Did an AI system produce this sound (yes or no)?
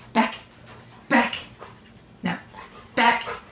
no